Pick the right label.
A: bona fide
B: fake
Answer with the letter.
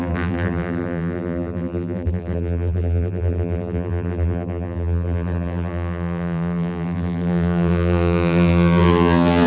B